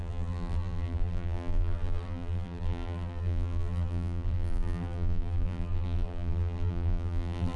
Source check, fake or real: fake